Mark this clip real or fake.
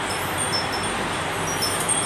real